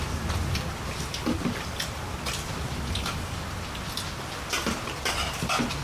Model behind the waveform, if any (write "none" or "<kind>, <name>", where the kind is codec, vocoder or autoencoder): none